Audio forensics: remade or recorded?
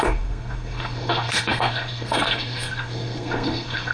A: remade